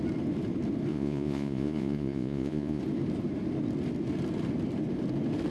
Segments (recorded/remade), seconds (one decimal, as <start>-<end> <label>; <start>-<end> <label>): 0.0-0.9 recorded; 0.9-2.8 remade; 2.8-5.5 recorded